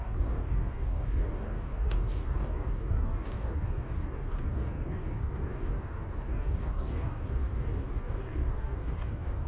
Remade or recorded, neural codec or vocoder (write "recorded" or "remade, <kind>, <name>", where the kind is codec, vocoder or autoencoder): remade, codec, DAC